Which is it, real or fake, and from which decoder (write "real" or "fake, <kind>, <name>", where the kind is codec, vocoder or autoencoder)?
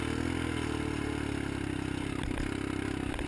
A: real